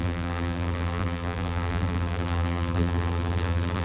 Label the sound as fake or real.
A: fake